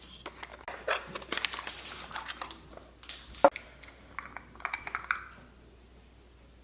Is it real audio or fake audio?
real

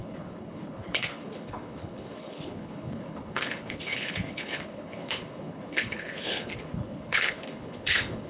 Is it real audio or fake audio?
fake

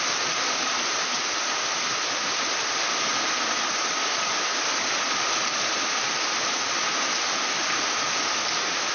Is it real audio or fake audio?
real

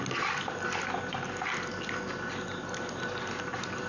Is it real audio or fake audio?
real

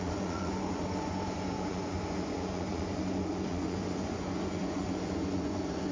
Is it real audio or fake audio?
fake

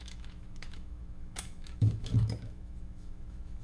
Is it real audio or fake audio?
fake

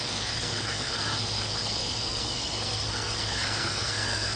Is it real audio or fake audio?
fake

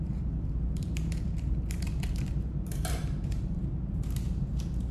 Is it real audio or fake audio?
fake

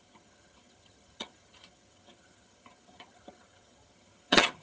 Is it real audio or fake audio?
fake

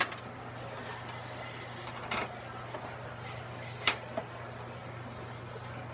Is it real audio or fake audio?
real